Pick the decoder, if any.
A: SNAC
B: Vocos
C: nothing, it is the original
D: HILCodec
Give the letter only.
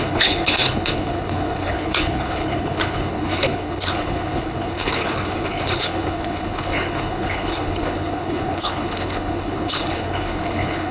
D